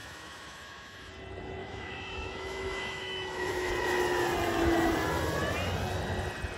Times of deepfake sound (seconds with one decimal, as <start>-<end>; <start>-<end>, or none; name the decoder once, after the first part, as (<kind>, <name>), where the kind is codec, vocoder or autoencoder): 0.0-1.1 (autoencoder, DAC-VAE); 1.6-3.7